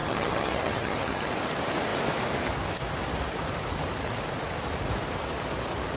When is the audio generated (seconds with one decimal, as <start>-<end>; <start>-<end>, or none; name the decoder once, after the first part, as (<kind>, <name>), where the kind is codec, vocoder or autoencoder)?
0.0-1.3 (vocoder, HiFi-GAN)